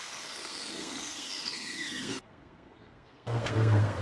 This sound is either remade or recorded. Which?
remade